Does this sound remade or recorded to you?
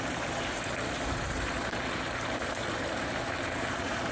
remade